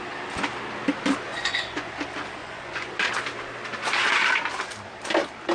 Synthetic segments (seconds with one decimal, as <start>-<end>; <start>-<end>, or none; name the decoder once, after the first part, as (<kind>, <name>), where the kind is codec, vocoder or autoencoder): 1.3-1.9 (vocoder, Vocos); 2.4-2.9